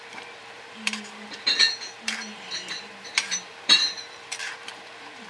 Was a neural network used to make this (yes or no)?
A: yes